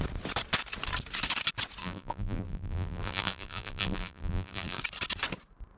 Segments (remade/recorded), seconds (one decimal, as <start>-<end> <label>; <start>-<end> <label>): 0.0-1.8 recorded; 1.8-4.8 remade; 4.8-5.8 recorded